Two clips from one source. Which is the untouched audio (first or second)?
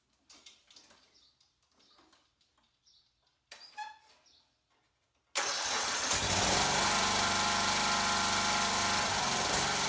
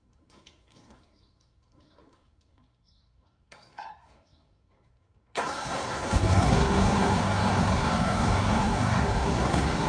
first